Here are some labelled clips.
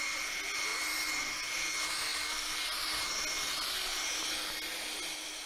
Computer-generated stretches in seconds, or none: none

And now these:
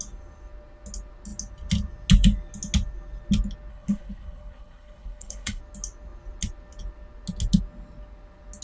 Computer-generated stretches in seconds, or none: 3.7-5.6

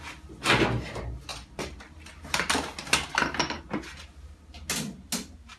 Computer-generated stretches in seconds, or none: none

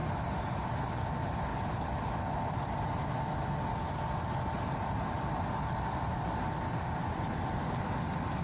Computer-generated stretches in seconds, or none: none

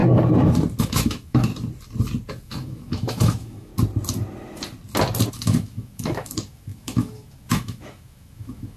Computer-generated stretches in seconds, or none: 0.8-1.5; 2.3-3.7; 5.3-8.8